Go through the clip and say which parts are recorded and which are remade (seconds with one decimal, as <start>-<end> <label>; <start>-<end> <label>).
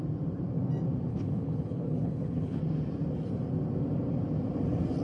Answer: 0.0-1.1 recorded; 1.1-2.6 remade; 2.6-5.0 recorded